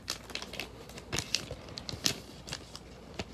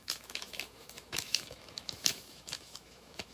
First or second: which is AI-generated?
second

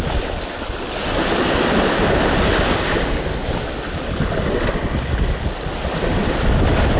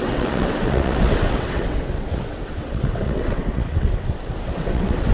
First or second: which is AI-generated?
second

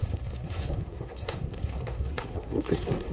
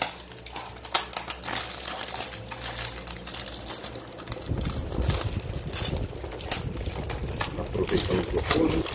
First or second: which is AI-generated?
first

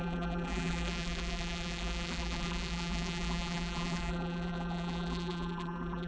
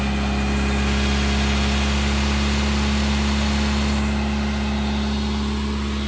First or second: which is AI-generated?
first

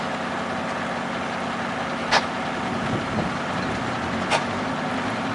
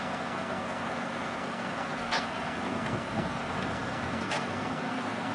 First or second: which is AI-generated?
second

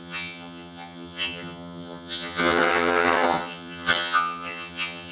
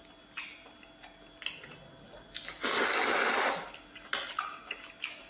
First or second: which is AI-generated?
first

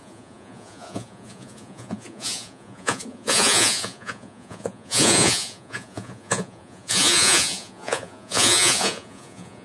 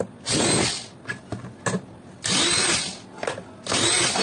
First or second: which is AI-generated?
first